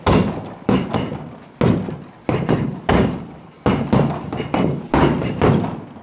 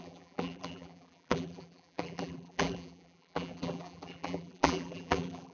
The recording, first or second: first